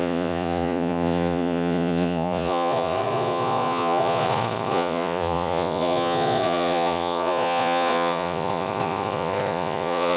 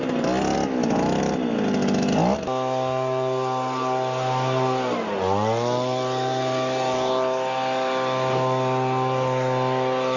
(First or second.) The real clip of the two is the second